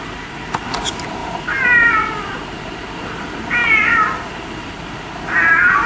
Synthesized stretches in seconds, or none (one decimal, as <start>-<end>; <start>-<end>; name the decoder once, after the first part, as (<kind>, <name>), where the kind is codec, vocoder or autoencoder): none